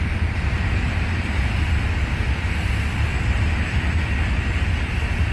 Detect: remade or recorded recorded